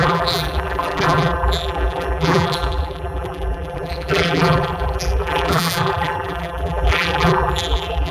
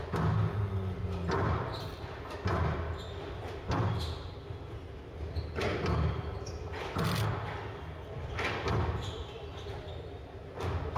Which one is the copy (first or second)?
first